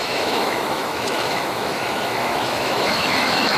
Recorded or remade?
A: remade